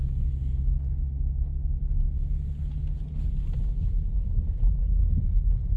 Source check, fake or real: real